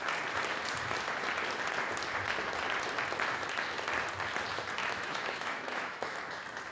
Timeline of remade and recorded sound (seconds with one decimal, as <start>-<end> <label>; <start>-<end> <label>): 0.0-4.8 recorded; 4.8-6.2 remade; 6.2-6.7 recorded